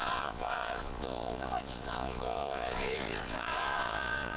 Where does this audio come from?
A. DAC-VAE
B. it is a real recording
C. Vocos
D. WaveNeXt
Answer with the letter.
C